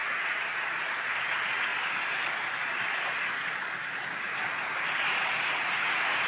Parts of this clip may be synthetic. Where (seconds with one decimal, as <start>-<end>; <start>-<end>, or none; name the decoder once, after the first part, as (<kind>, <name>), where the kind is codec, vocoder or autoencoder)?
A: 0.0-1.7 (vocoder, Vocos); 5.5-6.3